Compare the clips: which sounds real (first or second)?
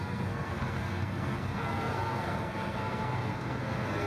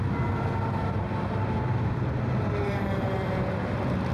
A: second